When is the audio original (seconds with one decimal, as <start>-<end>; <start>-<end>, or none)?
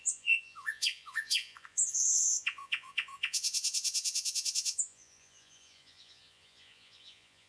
none